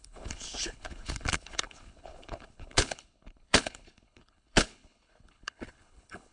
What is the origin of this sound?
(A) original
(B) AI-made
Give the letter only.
B